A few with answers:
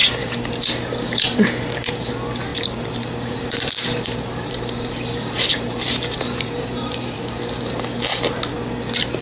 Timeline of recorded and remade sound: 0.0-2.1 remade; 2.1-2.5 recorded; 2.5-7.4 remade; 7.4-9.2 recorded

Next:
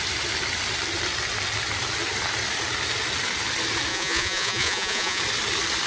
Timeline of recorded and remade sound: 0.0-3.9 recorded; 3.9-5.2 remade; 5.2-5.9 recorded

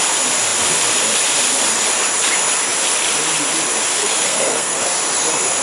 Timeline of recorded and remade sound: 0.0-4.0 recorded; 4.0-4.8 remade; 4.8-5.6 recorded

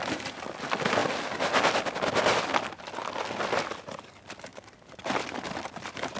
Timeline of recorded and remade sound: 0.0-4.5 recorded; 4.5-5.4 remade; 5.4-6.2 recorded

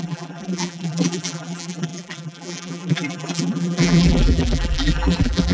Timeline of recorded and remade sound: 0.0-5.5 remade

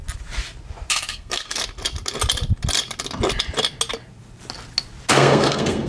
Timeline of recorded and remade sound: 0.0-0.9 recorded; 0.9-1.6 remade; 1.6-5.1 recorded; 5.1-5.9 remade

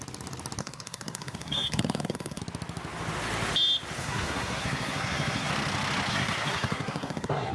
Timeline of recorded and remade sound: 0.0-0.6 recorded; 0.6-2.4 remade; 2.4-4.0 recorded; 4.0-5.5 remade; 5.5-6.1 recorded; 6.1-7.5 remade

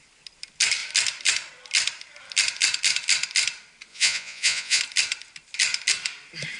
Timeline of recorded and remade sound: 0.0-3.9 recorded; 3.9-4.8 remade; 4.8-6.6 recorded